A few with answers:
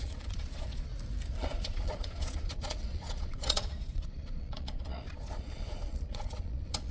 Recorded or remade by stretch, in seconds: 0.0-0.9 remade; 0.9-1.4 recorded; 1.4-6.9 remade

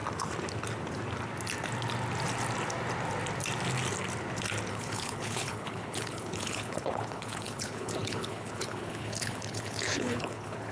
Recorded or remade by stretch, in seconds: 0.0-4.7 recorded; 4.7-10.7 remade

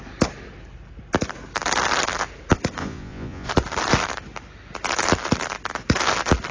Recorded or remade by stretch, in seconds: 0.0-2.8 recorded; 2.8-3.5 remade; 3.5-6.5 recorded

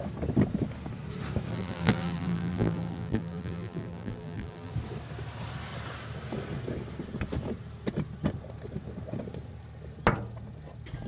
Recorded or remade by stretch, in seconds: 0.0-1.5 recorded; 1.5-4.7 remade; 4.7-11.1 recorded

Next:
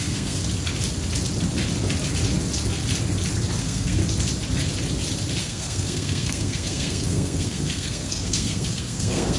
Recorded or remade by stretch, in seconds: 0.0-0.4 remade; 0.4-3.6 recorded; 3.6-4.0 remade; 4.0-5.4 recorded; 5.4-9.4 remade